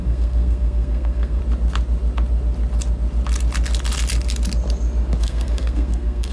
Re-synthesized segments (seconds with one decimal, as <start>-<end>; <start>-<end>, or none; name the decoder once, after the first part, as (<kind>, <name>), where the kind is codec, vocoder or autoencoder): 0.0-1.4 (codec, SNAC); 5.2-6.3